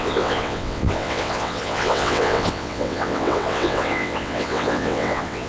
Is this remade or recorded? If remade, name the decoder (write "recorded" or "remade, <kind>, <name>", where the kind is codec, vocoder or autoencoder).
remade, vocoder, WaveNeXt